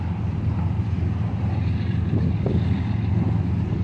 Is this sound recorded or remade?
recorded